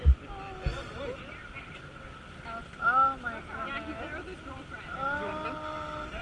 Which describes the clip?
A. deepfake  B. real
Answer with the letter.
B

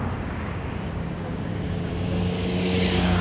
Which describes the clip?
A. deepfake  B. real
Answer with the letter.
A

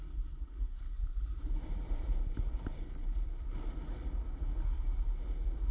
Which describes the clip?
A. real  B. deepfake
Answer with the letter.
A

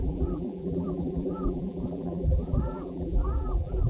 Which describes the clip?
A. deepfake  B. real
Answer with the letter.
A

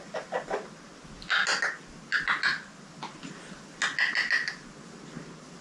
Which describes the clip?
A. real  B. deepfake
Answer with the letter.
A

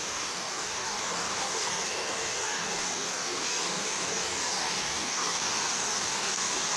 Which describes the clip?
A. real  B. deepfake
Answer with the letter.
B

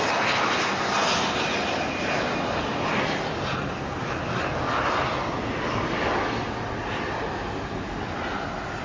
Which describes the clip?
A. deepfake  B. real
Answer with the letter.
B